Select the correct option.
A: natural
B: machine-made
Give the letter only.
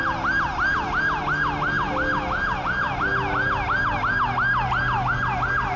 A